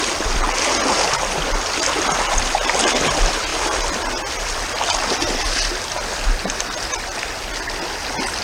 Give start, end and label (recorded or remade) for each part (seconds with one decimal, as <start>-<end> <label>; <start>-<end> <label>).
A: 0.0-8.4 recorded